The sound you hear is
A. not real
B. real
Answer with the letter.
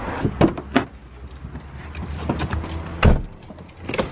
B